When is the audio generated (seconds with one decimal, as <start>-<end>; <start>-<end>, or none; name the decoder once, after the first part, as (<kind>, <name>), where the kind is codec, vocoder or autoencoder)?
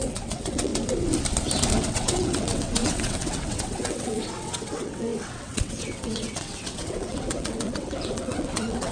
0.0-0.7 (vocoder, WaveNeXt); 1.7-8.9